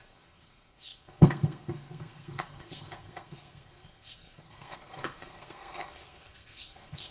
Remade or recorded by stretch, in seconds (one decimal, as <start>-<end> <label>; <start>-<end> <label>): 0.0-7.1 remade